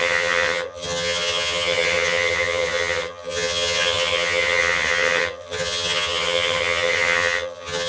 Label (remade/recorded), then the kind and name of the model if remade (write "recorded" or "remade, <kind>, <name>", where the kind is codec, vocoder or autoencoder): remade, vocoder, HiFi-GAN